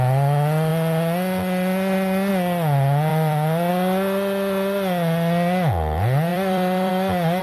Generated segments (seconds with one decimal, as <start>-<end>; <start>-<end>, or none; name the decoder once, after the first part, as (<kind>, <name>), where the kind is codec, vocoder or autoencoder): 3.1-3.7 (vocoder, BigVGAN v2); 6.3-6.9